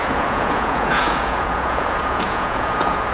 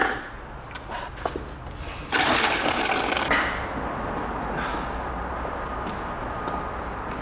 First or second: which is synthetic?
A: first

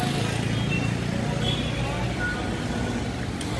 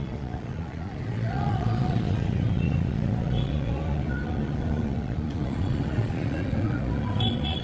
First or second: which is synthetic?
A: second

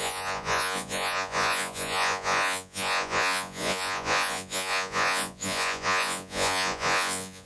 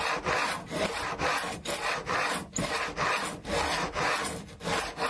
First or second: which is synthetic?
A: first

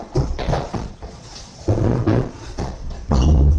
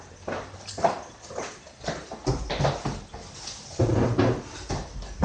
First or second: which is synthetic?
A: first